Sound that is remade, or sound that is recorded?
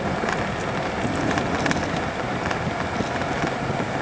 recorded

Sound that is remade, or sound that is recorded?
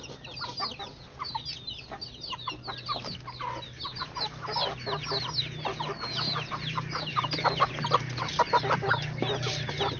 recorded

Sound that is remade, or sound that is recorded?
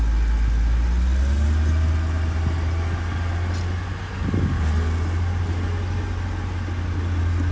recorded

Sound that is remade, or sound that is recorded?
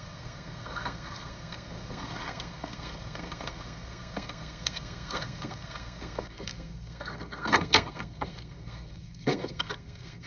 remade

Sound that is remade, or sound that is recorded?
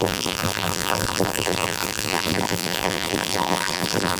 remade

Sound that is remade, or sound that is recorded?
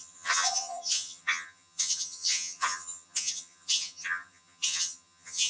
remade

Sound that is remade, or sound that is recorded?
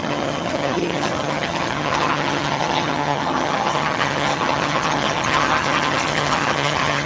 remade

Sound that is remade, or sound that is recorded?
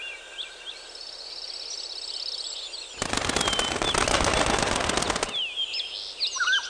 recorded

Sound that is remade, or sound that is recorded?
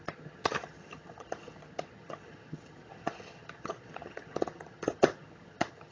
remade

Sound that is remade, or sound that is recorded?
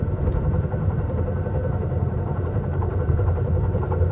remade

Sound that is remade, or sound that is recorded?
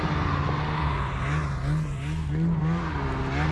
recorded